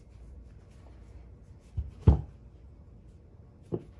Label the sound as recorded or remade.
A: recorded